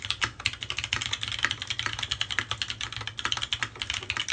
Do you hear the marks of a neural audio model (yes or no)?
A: no